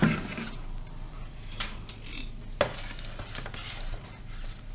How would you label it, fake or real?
real